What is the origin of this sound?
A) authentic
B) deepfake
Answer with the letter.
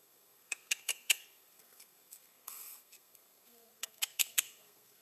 B